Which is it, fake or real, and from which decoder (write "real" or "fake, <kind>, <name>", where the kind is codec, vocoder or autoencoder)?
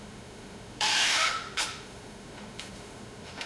fake, autoencoder, DAC-VAE